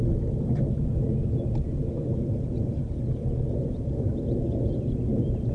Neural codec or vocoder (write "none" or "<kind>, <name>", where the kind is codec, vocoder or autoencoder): none